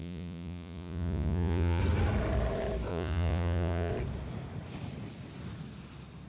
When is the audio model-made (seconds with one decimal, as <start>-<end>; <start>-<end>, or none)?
0.0-1.8; 2.9-3.9

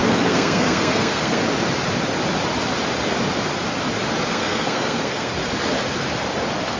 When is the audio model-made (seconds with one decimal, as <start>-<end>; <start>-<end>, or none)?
0.0-1.4; 4.3-5.3

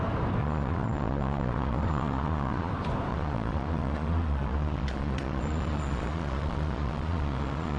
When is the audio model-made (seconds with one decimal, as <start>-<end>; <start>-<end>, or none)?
0.4-2.7; 3.1-7.8

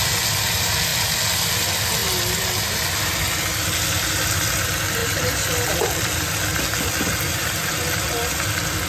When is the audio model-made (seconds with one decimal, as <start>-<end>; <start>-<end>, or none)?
5.0-5.7

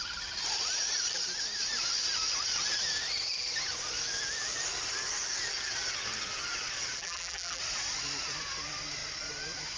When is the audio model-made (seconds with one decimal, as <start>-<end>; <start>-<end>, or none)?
7.0-7.6

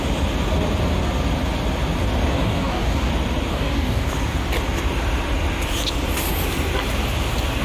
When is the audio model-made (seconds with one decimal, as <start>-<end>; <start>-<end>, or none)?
2.3-3.1; 3.5-4.1

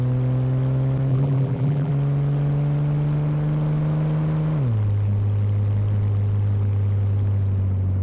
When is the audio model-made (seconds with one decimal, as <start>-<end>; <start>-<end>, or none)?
1.1-1.9

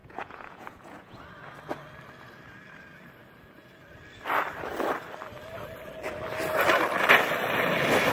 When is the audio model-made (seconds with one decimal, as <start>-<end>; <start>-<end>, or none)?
0.0-1.2